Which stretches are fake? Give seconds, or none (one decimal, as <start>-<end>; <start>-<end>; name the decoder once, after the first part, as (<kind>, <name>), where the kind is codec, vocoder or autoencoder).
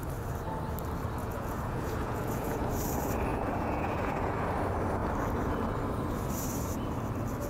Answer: 1.2-2.7 (vocoder, Vocos); 3.3-4.4